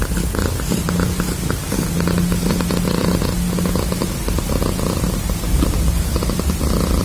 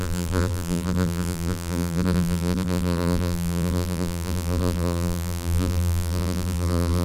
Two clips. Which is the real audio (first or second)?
first